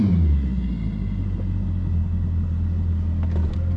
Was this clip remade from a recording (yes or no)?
no